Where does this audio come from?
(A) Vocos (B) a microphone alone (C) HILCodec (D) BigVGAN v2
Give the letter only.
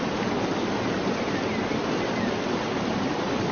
B